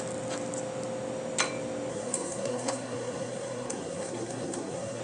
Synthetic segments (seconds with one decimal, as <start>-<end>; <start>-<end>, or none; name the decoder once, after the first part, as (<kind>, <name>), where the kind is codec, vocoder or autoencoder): 1.9-5.0 (codec, SNAC)